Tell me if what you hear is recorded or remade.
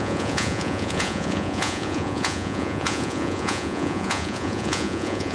remade